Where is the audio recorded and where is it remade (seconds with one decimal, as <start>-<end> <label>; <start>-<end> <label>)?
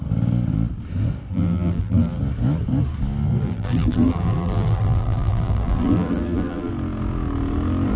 0.0-1.3 recorded; 1.3-2.2 remade; 2.2-3.4 recorded; 3.4-6.7 remade; 6.7-8.0 recorded